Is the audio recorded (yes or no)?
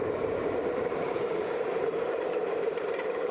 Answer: no